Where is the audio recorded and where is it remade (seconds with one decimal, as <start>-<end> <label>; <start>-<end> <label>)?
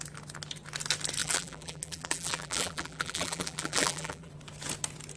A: 0.0-1.2 recorded; 1.2-4.3 remade; 4.3-5.2 recorded